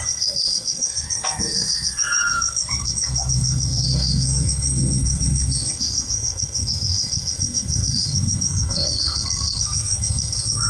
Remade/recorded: remade